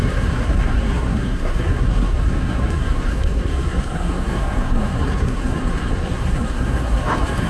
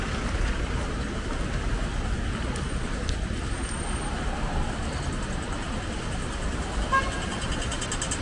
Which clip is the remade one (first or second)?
first